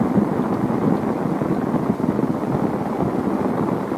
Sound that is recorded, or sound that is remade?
recorded